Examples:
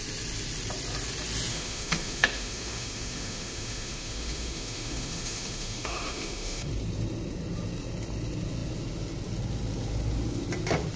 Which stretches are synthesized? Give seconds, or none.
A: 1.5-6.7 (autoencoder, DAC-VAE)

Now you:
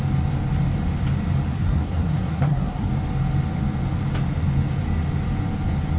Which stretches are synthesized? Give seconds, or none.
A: 1.5-2.9 (codec, SNAC)

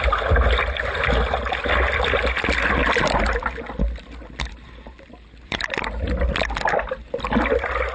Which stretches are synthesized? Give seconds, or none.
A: none